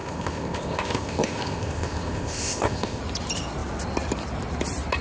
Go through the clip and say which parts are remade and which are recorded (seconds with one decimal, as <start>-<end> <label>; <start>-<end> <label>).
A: 0.0-3.0 remade; 3.0-5.0 recorded